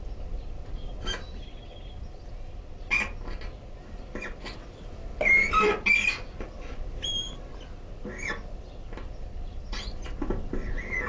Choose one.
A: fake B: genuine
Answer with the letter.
B